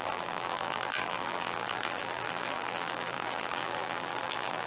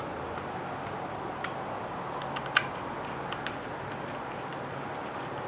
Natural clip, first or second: second